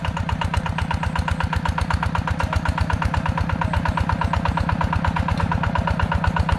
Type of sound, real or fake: real